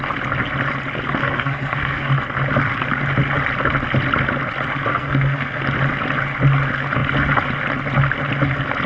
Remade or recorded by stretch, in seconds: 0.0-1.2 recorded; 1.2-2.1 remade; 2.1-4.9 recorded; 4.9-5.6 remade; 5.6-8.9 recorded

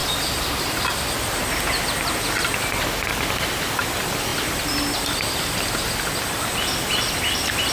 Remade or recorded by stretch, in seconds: 0.0-7.7 recorded

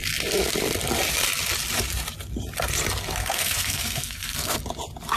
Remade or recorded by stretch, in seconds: 0.0-3.2 recorded; 3.2-4.6 remade; 4.6-5.2 recorded

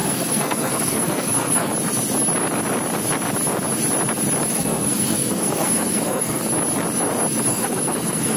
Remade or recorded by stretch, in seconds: 0.0-1.7 remade; 1.7-4.5 recorded; 4.5-6.4 remade; 6.4-7.5 recorded; 7.5-8.4 remade

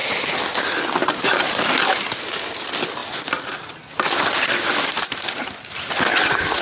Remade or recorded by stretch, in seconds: 0.0-1.0 recorded; 1.0-2.2 remade; 2.2-6.6 recorded